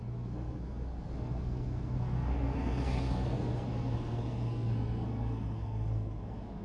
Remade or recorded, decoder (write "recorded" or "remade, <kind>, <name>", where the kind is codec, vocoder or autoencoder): remade, codec, SNAC